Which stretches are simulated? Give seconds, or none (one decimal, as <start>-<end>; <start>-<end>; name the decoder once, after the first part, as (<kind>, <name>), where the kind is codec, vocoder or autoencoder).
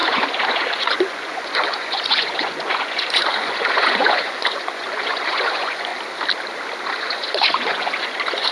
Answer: 0.0-5.9 (vocoder, Vocos); 7.0-8.5